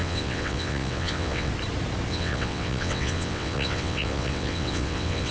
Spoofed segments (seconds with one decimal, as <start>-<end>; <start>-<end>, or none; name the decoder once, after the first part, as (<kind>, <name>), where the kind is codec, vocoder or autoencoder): 0.0-1.5 (vocoder, WaveNeXt); 2.1-5.3